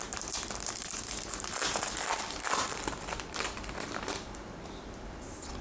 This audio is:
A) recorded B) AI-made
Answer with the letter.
B